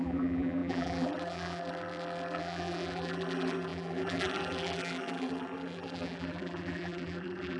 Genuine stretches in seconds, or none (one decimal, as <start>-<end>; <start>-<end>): none